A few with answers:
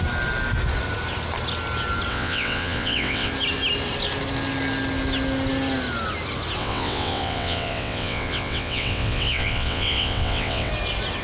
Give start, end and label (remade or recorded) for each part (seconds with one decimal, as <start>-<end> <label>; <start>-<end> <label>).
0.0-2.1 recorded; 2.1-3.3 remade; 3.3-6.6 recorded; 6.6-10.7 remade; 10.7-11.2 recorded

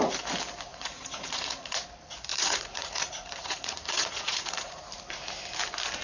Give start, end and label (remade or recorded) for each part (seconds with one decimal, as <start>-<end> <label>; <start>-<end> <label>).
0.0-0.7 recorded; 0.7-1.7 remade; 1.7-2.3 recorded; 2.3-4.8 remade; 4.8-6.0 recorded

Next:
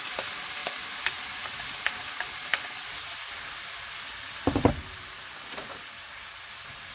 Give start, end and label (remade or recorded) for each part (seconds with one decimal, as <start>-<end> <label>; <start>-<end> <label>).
0.0-6.9 recorded